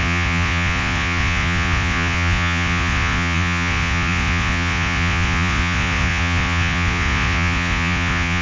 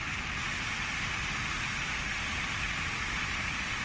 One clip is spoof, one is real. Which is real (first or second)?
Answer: second